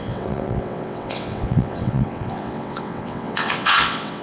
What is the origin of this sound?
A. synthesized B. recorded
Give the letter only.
A